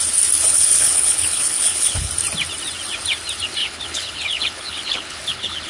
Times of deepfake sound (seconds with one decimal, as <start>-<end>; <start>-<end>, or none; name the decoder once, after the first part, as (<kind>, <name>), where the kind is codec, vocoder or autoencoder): 0.5-2.1 (codec, HILCodec); 3.6-5.7